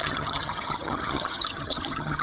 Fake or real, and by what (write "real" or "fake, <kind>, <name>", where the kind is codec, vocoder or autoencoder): fake, vocoder, HiFi-GAN